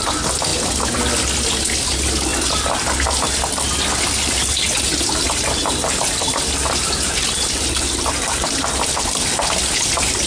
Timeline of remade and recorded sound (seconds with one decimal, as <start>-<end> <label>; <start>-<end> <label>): 0.0-0.5 recorded; 0.5-1.1 remade; 1.1-5.6 recorded; 5.6-9.3 remade; 9.3-10.3 recorded